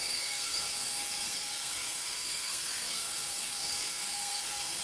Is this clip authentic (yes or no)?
no